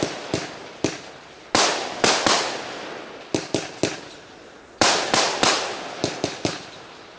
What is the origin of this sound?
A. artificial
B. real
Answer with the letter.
B